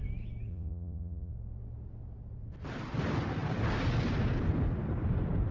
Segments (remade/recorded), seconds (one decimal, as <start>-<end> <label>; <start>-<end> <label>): 0.0-0.5 recorded; 0.5-1.3 remade; 1.3-5.5 recorded